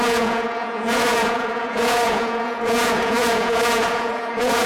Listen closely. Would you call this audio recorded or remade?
remade